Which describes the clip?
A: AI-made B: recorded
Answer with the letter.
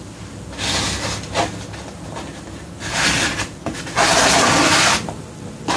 B